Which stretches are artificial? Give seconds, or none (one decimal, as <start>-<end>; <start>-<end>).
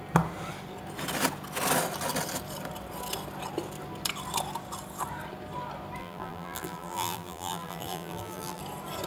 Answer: 6.0-8.6